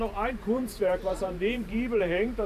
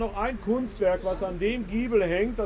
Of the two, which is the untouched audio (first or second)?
second